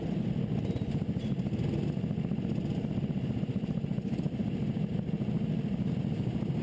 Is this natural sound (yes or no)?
yes